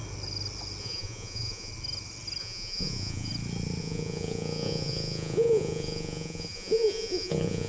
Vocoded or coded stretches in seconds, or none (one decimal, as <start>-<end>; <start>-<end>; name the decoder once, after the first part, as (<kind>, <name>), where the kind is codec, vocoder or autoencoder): 0.8-1.7 (vocoder, Vocos); 2.4-3.3; 3.8-7.7